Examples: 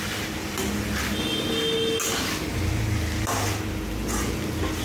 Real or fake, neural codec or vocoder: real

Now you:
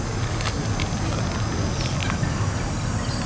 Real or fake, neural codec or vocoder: real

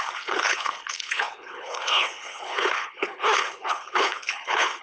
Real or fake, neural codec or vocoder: fake, codec, HILCodec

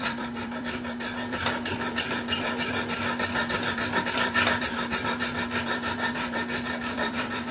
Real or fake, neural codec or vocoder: fake, vocoder, BigVGAN v2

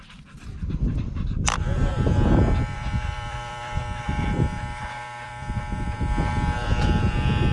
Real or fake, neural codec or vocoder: fake, vocoder, BigVGAN v2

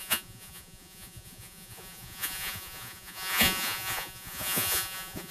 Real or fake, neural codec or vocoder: fake, vocoder, Vocos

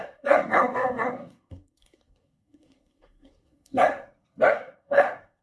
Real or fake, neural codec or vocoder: fake, codec, SNAC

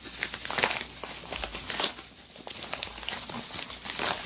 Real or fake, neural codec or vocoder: real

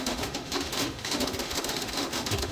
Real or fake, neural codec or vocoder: fake, autoencoder, DAC-VAE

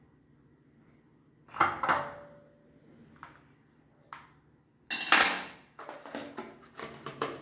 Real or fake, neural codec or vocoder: real